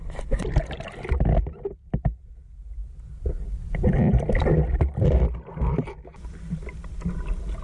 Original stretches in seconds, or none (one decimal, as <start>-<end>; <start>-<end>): 0.0-7.6